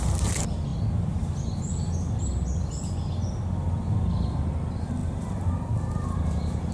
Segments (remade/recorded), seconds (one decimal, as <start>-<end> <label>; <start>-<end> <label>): 0.0-5.0 recorded; 5.0-6.7 remade